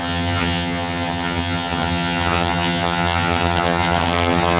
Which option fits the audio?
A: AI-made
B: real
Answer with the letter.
A